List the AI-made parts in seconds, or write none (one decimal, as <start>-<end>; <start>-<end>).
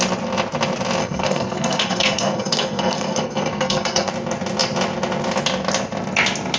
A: 1.0-4.1